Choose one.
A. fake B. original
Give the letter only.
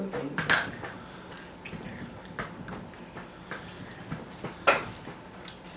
B